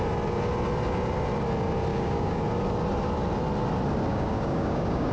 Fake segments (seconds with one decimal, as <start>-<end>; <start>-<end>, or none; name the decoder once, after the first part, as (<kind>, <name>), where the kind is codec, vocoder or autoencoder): 1.9-2.4 (codec, DAC); 4.1-5.1